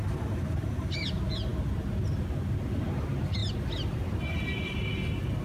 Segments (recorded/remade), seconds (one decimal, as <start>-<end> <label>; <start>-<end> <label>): 0.0-5.4 recorded